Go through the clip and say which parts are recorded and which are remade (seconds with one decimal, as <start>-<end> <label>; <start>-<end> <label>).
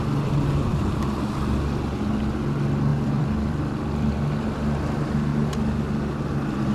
0.0-2.9 recorded; 2.9-4.1 remade; 4.1-6.7 recorded